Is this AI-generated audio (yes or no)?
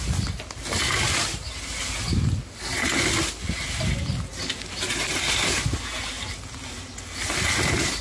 no